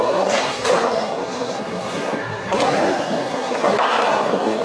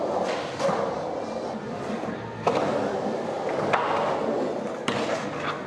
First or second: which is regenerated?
first